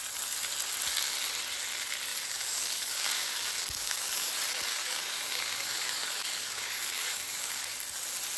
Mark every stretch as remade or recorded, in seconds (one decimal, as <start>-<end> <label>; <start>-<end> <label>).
0.0-2.1 recorded; 2.1-4.3 remade; 4.3-4.7 recorded; 4.7-7.6 remade; 7.6-8.4 recorded